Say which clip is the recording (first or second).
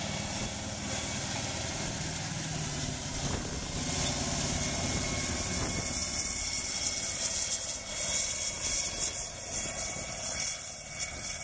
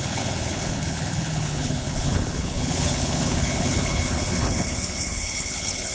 first